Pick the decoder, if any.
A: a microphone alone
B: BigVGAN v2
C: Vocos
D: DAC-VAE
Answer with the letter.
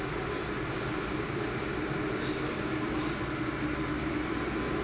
A